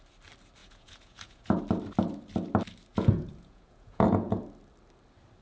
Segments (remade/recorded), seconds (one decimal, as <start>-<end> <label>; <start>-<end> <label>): 0.0-0.6 recorded; 0.6-1.6 remade; 1.6-2.9 recorded; 2.9-4.4 remade; 4.4-5.4 recorded